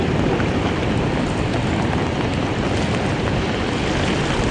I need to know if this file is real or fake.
real